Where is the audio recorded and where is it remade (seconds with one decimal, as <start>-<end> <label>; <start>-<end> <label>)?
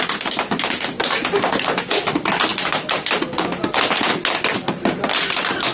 0.0-5.7 recorded